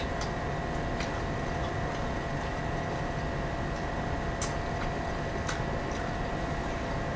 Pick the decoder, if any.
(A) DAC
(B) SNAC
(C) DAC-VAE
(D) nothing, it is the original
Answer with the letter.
D